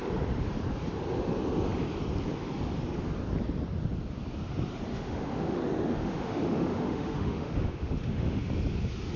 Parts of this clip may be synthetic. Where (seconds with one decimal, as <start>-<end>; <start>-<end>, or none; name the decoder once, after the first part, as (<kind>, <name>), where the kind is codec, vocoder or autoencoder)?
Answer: 4.9-5.6 (autoencoder, DAC-VAE); 6.0-8.4